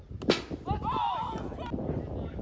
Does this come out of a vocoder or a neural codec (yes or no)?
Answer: no